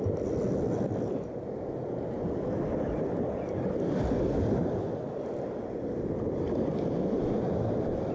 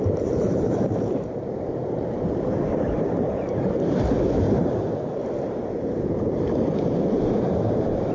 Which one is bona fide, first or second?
first